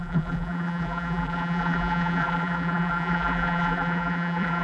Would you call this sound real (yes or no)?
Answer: no